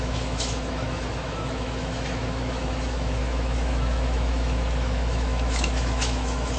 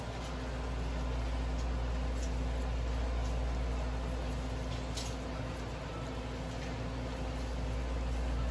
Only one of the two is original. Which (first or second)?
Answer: second